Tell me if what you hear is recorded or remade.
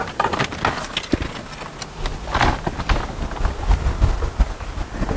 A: recorded